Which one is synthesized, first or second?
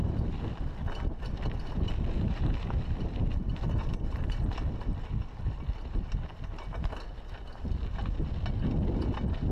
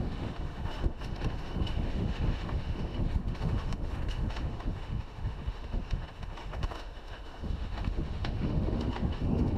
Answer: second